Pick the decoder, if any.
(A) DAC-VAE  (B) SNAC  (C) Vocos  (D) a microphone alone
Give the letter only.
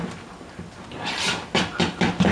D